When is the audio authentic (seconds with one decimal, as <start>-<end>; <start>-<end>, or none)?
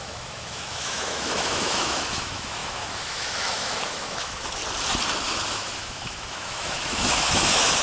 4.6-5.5